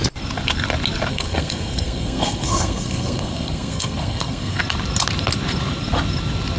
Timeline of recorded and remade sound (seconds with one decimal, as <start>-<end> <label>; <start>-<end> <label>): 0.0-1.1 recorded; 1.1-4.6 remade; 4.6-6.6 recorded